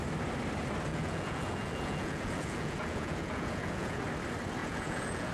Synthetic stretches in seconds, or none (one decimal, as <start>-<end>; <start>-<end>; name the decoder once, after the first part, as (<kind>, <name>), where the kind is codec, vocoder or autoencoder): 0.9-4.0 (vocoder, Vocos); 4.6-5.3

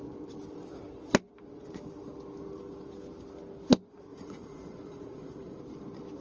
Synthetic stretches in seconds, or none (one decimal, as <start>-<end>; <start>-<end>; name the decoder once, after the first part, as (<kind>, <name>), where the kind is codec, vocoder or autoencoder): 4.1-5.6 (vocoder, Vocos)

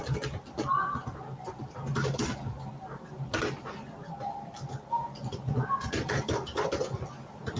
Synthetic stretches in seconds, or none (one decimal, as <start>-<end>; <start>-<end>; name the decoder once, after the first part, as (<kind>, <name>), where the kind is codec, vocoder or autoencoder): 5.2-5.9 (vocoder, Vocos)

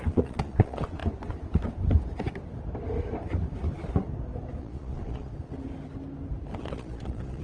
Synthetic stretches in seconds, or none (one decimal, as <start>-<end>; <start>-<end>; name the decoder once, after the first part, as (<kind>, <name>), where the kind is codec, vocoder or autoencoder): 0.0-1.0 (vocoder, Vocos); 4.6-5.3; 6.6-7.4

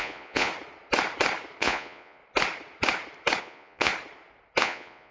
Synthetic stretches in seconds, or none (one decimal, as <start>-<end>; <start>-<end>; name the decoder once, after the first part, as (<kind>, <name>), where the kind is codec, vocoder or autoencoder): 0.0-0.5 (vocoder, Vocos); 1.6-2.2; 3.4-3.9; 4.6-5.1

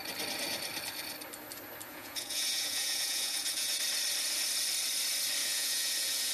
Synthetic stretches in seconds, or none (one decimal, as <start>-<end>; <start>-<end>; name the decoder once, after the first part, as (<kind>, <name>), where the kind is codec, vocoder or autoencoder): 1.9-3.8 (vocoder, Vocos); 5.4-6.3